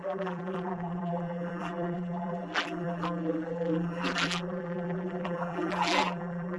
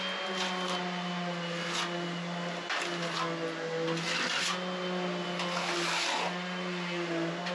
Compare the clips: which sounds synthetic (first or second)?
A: first